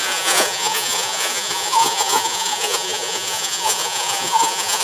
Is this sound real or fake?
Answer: fake